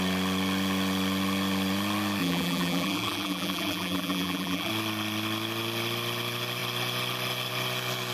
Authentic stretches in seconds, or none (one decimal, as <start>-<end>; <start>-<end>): 0.0-2.2; 4.7-8.1